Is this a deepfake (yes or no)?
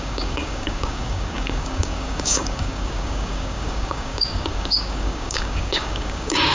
yes